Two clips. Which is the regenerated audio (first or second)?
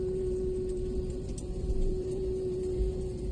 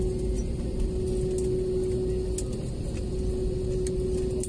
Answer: first